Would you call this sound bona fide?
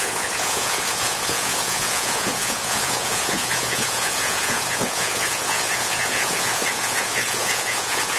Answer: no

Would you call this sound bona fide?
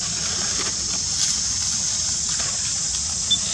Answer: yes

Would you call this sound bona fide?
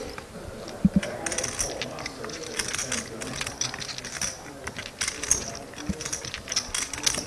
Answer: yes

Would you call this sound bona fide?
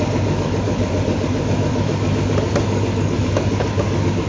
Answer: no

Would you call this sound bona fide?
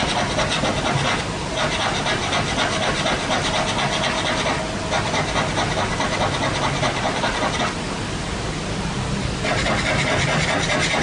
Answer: yes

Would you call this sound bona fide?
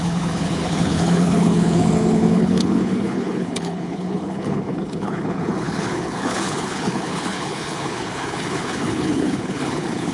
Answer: no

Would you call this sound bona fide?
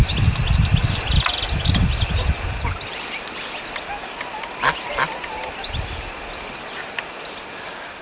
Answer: yes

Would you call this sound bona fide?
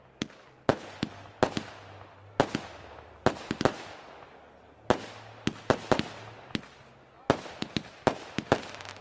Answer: yes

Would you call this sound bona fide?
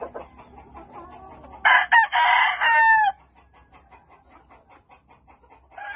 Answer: yes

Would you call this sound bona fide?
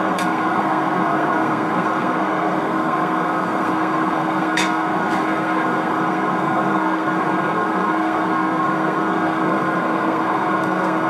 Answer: no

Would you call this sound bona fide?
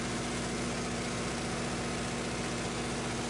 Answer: yes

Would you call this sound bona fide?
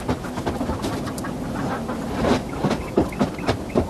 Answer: yes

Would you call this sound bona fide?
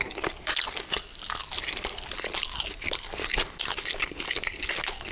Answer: yes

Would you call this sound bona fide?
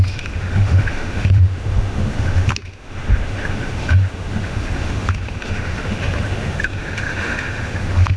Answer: no